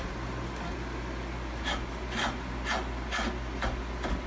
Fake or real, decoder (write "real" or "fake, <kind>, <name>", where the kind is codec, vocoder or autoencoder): real